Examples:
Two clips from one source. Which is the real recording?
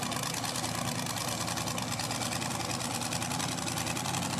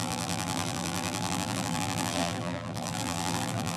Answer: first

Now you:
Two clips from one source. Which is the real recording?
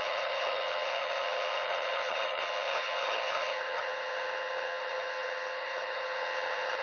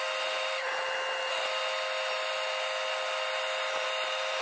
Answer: second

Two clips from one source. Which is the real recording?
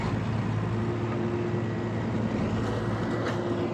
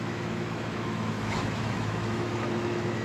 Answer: first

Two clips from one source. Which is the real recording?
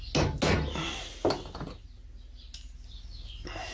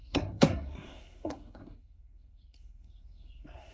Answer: first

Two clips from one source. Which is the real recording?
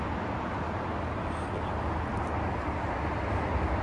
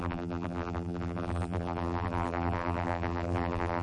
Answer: first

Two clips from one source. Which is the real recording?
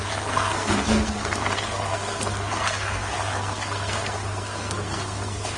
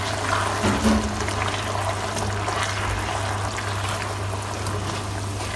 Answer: second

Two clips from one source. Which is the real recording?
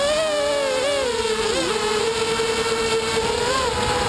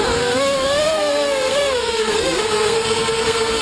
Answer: first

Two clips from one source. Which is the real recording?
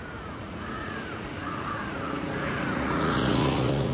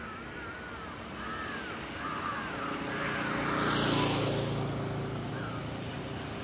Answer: second